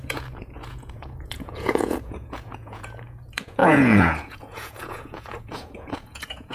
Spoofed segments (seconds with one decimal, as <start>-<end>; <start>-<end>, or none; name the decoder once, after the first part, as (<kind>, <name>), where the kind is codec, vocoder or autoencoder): 0.0-6.5 (vocoder, Vocos)